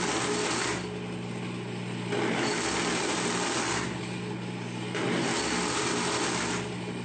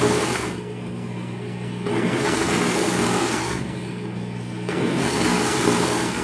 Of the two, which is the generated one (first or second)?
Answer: second